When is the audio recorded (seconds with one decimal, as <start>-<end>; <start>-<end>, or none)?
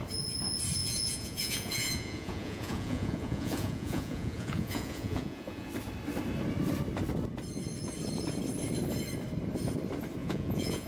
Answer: 0.0-0.8; 5.7-10.2